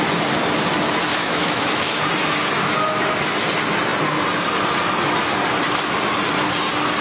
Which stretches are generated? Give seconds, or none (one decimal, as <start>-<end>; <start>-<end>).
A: 1.1-2.0